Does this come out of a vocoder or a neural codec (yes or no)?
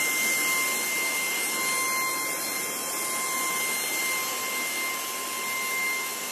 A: no